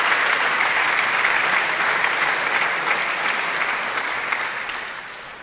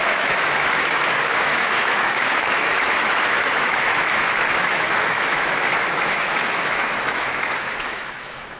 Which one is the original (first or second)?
first